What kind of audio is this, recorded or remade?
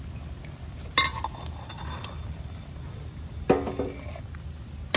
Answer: recorded